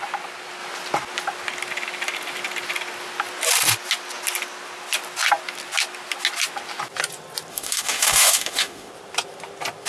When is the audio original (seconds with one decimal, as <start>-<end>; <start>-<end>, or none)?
0.0-7.5; 8.9-9.9